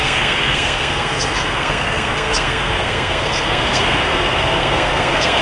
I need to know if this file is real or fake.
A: fake